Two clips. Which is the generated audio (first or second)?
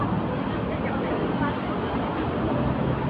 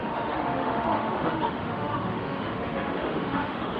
second